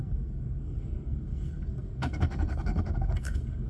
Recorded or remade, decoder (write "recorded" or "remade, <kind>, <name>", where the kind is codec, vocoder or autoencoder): remade, codec, SNAC